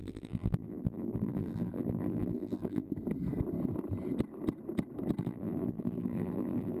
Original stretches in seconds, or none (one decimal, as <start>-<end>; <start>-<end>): 2.9-5.2